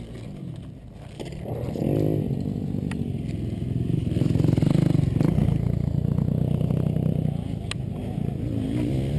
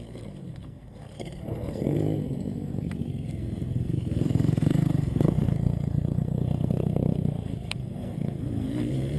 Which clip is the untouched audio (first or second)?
first